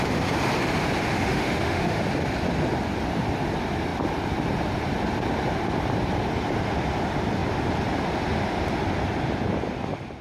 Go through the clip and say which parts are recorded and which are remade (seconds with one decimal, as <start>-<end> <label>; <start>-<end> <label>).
0.0-1.1 recorded; 1.1-2.0 remade; 2.0-10.2 recorded